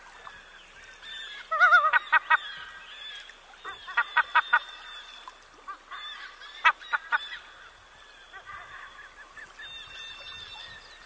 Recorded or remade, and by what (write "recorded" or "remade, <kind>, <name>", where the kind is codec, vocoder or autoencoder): recorded